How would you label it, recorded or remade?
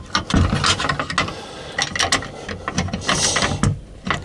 recorded